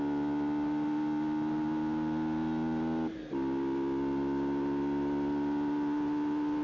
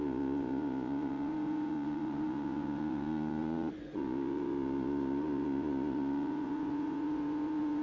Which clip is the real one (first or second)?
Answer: first